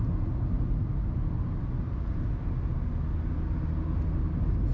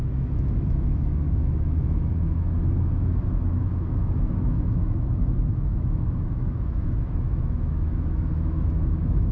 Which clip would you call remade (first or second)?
second